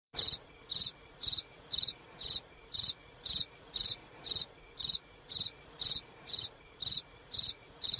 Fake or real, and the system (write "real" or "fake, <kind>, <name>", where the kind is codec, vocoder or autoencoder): fake, vocoder, Vocos